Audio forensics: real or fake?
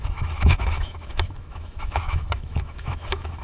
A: fake